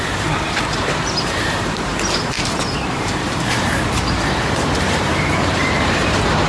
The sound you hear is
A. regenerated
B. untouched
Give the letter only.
A